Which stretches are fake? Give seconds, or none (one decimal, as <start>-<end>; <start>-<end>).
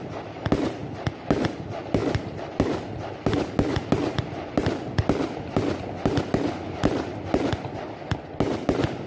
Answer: 0.8-1.5